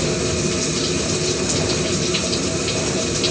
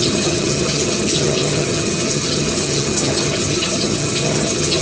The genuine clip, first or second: first